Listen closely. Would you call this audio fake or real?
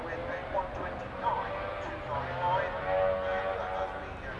real